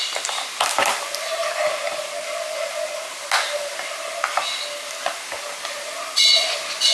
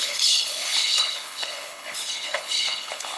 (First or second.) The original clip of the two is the first